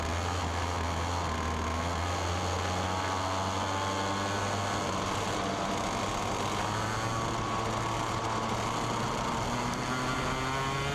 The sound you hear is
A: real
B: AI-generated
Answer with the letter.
A